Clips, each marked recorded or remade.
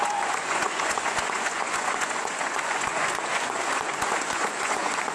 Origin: remade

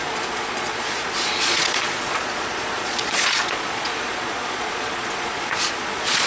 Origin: remade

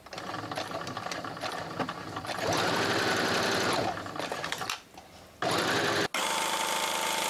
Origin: recorded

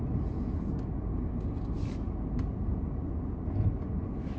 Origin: recorded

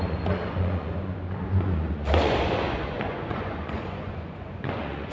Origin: remade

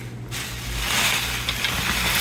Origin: recorded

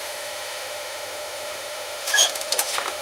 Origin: remade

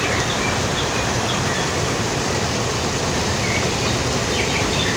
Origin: recorded